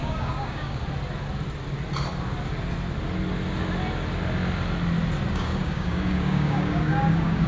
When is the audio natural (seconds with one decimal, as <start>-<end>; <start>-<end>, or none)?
0.8-5.3